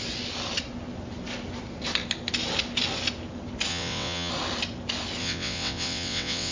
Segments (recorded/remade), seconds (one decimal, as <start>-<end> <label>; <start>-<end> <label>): 0.0-3.7 recorded; 3.7-4.3 remade; 4.3-5.2 recorded; 5.2-6.5 remade